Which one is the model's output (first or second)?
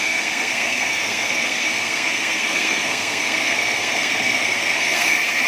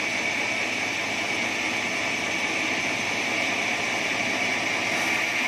first